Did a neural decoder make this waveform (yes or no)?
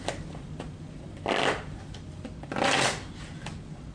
no